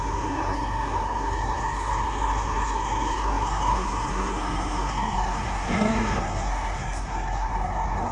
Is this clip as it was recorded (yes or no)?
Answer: no